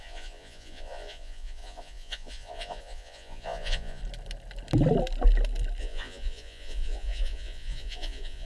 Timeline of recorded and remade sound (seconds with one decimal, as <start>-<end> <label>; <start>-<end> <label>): 0.0-4.0 remade; 4.0-5.8 recorded; 5.8-8.4 remade